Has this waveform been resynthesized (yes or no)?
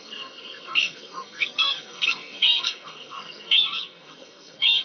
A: yes